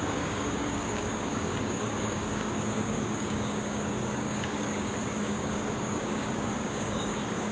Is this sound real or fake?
fake